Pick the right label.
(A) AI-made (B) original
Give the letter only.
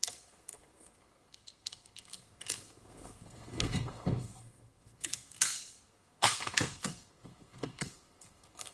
A